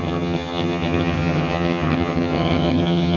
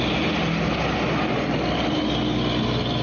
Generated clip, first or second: first